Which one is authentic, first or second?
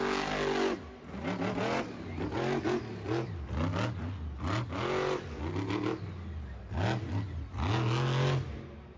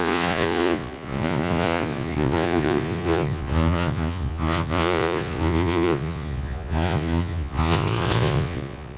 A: first